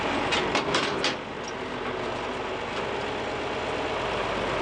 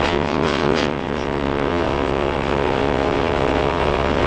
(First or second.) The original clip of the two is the first